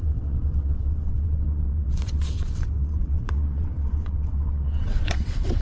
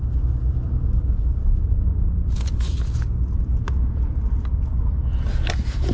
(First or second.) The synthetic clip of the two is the first